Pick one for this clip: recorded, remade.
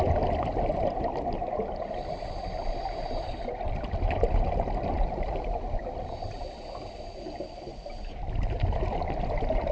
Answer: recorded